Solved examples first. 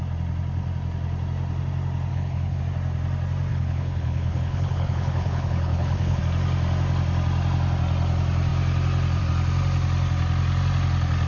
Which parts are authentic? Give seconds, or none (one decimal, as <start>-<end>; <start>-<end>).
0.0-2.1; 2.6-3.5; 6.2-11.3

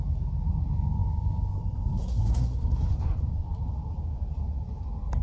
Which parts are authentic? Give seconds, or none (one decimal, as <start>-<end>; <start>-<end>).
0.0-2.0; 2.9-5.2

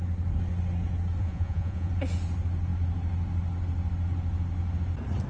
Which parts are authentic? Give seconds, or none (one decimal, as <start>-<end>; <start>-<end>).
0.0-1.2; 1.9-5.3